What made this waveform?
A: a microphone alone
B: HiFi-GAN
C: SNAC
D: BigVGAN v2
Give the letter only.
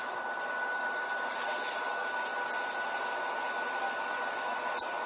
A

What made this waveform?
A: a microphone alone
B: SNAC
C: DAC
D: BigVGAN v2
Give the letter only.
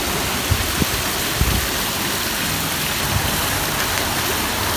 A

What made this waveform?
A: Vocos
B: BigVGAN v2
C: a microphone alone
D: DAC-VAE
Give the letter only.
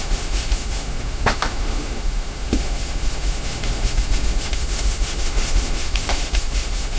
D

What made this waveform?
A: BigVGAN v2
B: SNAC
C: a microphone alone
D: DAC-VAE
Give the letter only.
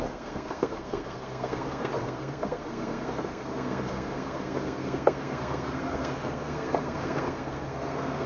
B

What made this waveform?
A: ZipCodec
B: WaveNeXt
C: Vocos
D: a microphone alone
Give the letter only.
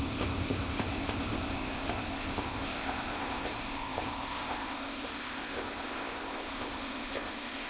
A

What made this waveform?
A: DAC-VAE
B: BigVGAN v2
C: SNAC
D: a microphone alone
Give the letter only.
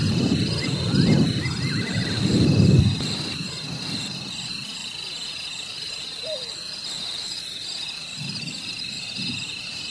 D